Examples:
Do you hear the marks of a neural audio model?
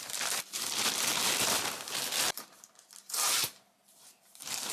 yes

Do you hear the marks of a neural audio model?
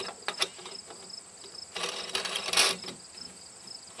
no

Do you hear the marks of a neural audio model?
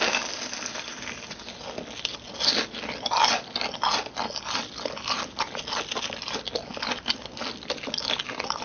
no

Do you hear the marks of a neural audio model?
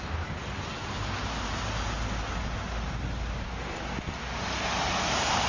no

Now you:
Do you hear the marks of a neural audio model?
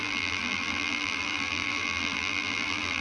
yes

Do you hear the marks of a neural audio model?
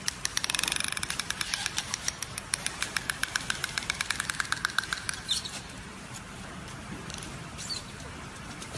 yes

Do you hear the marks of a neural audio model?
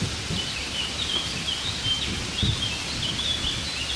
no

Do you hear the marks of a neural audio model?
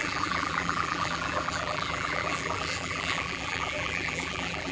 yes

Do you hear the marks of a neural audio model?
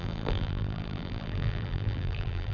yes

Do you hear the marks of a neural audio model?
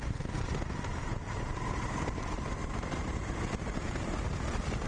yes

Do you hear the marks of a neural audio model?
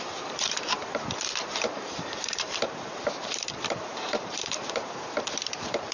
yes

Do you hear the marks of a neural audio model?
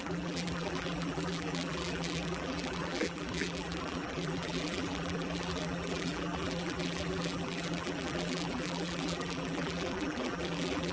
yes